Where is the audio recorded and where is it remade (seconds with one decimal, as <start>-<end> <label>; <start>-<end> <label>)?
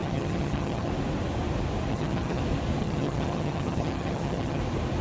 0.0-0.9 remade; 0.9-1.9 recorded; 1.9-2.4 remade; 2.4-2.8 recorded; 2.8-4.6 remade; 4.6-5.0 recorded